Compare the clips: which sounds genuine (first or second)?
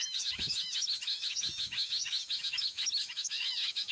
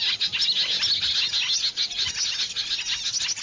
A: second